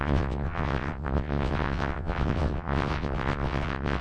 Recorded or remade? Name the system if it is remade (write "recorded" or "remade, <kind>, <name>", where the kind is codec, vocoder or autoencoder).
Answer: remade, vocoder, WaveNeXt